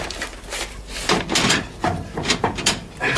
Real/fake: real